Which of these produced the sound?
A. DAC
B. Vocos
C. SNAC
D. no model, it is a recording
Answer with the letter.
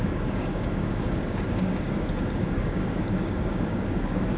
A